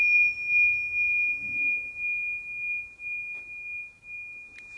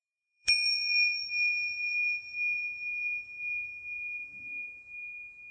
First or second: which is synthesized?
second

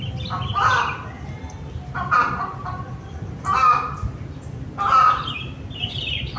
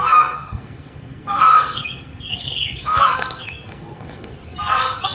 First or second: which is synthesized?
second